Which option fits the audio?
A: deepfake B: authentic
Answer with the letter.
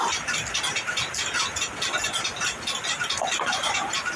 A